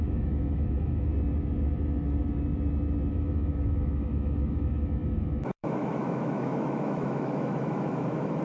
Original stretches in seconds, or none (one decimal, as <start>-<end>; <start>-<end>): 1.1-3.1